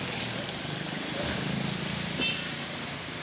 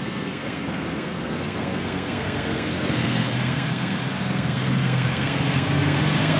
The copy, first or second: second